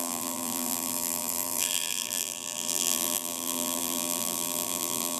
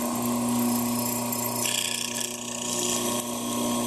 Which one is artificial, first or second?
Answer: first